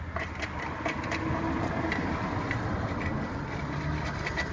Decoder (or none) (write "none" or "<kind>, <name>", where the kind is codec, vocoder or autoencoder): none